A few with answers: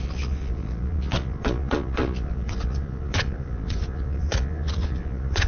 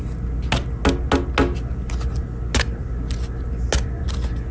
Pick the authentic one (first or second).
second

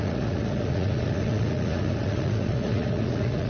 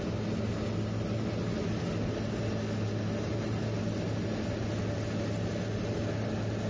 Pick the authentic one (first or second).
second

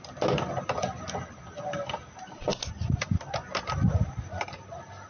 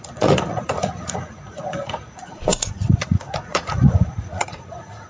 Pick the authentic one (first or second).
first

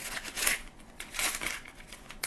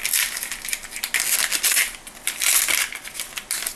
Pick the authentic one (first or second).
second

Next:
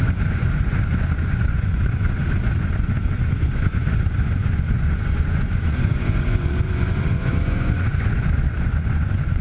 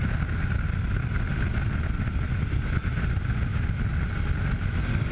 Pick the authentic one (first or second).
second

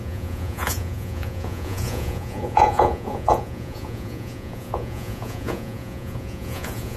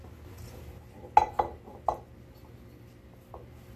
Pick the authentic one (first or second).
second